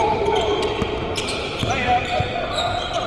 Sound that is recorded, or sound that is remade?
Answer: remade